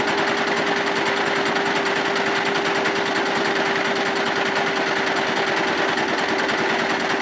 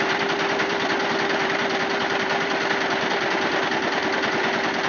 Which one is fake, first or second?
second